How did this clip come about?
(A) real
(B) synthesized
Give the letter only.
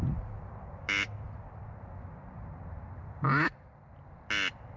A